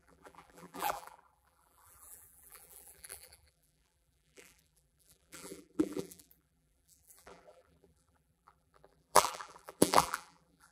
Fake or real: fake